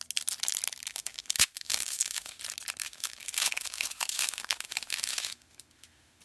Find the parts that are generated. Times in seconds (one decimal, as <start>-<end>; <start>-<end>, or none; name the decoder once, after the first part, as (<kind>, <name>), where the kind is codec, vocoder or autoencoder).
0.9-2.4 (autoencoder, DAC-VAE); 2.8-6.2